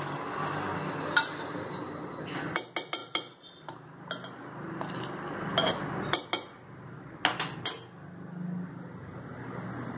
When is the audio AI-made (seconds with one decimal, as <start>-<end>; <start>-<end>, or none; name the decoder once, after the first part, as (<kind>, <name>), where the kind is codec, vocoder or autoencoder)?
none